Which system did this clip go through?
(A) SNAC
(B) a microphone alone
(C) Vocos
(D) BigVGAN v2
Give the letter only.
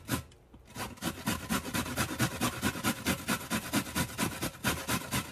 B